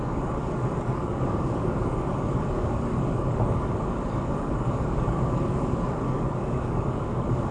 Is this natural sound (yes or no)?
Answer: no